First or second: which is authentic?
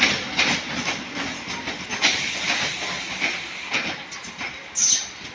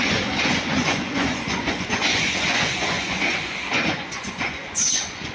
first